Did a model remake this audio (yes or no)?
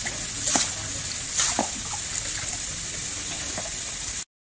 no